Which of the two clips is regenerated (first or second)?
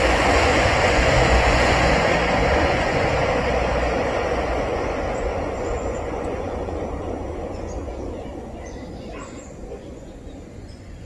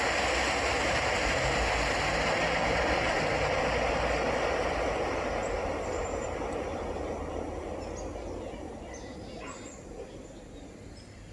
first